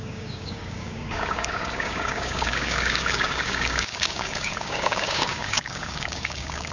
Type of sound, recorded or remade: remade